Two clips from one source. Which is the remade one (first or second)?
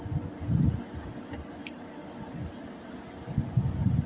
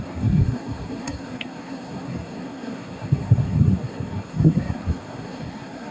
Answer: second